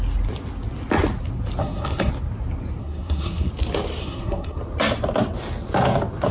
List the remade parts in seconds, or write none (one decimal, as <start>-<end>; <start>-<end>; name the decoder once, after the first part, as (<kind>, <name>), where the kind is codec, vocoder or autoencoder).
1.6-2.1 (codec, SNAC); 2.8-3.5; 4.0-4.6